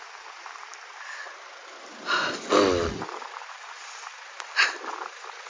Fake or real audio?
real